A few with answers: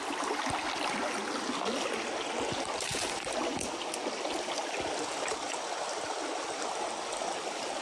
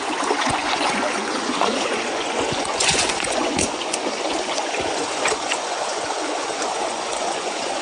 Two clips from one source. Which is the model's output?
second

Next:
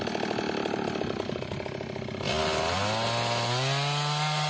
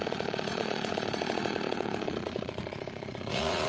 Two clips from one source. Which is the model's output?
second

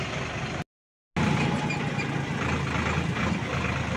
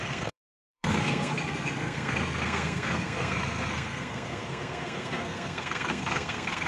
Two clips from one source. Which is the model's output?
second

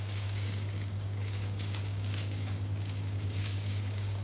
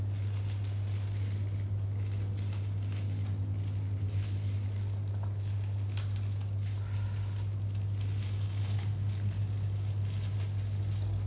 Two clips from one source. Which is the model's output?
first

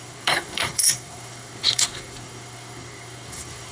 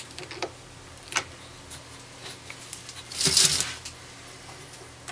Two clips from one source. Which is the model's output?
first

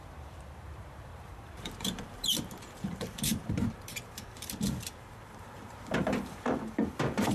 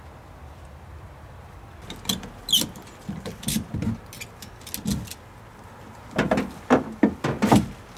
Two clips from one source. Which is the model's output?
first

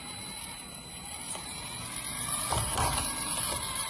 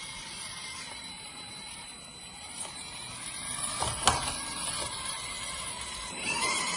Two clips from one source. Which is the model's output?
second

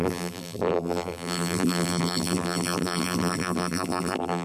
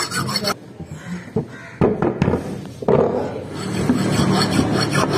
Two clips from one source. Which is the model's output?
first